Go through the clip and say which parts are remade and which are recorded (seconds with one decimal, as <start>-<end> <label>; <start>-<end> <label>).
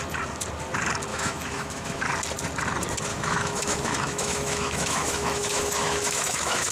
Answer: 0.0-1.1 recorded; 1.1-2.0 remade; 2.0-3.1 recorded; 3.1-6.7 remade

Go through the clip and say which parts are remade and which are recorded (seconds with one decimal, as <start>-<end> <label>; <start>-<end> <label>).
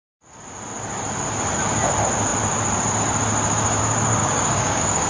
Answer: 0.0-4.2 recorded; 4.2-5.1 remade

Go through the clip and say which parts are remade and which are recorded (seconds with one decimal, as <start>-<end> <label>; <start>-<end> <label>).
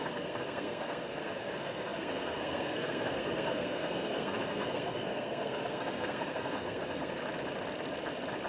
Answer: 0.0-7.2 remade; 7.2-8.5 recorded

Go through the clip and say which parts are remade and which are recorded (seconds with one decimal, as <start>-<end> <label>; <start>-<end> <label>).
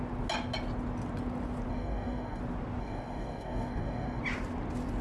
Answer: 0.0-1.7 recorded; 1.7-2.4 remade; 2.4-2.8 recorded; 2.8-4.2 remade; 4.2-5.0 recorded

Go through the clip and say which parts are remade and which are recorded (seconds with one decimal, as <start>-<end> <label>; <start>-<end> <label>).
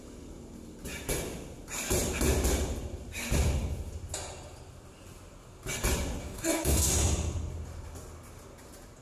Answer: 0.0-6.2 recorded; 6.2-6.9 remade; 6.9-9.0 recorded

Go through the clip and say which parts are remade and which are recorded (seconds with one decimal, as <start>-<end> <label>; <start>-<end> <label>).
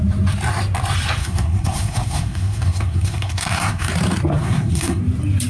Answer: 0.0-1.2 recorded; 1.2-3.9 remade; 3.9-4.4 recorded; 4.4-5.0 remade; 5.0-5.5 recorded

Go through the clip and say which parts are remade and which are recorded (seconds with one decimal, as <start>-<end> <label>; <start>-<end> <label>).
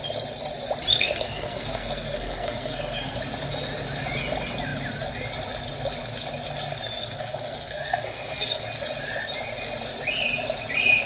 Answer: 0.0-0.9 recorded; 0.9-3.2 remade; 3.2-7.0 recorded; 7.0-8.6 remade; 8.6-11.1 recorded